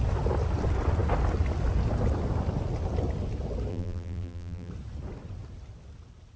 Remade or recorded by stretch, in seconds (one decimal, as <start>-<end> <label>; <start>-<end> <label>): 0.0-3.7 recorded; 3.7-4.7 remade; 4.7-6.4 recorded